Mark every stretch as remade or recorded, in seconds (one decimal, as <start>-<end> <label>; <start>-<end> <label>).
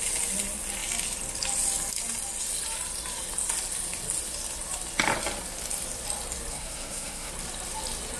0.0-6.5 recorded; 6.5-7.3 remade; 7.3-8.2 recorded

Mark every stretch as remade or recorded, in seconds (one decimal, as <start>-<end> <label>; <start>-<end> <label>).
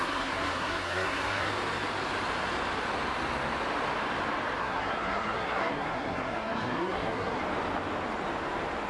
0.0-1.5 remade; 1.5-4.6 recorded; 4.6-7.4 remade; 7.4-8.9 recorded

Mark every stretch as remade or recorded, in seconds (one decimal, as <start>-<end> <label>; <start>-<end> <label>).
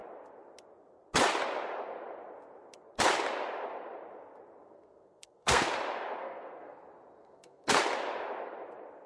0.0-4.6 recorded; 4.6-5.7 remade; 5.7-6.2 recorded; 6.2-6.8 remade; 6.8-7.2 recorded; 7.2-7.8 remade; 7.8-9.1 recorded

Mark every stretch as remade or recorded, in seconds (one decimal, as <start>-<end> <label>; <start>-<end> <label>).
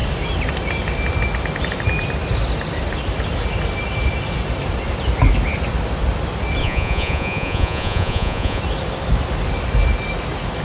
0.0-6.6 recorded; 6.6-8.6 remade; 8.6-10.6 recorded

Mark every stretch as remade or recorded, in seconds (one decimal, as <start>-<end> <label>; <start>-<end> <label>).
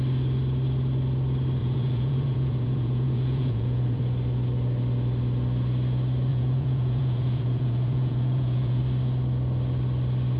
0.0-1.6 recorded; 1.6-4.0 remade; 4.0-6.3 recorded; 6.3-8.8 remade; 8.8-10.4 recorded